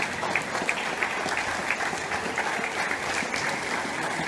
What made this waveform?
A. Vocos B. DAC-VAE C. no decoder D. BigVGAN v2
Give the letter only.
C